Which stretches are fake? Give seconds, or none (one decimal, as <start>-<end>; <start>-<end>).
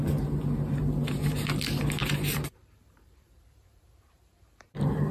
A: 2.0-5.1